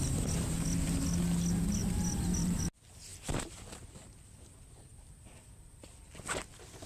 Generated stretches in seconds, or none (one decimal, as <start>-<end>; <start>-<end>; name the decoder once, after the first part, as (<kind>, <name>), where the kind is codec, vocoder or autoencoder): 1.8-2.6 (vocoder, BigVGAN v2); 3.1-3.7